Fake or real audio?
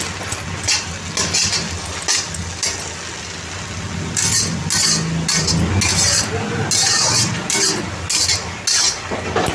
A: real